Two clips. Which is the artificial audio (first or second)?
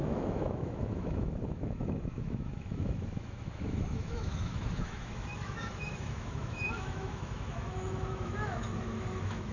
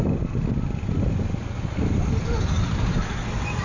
first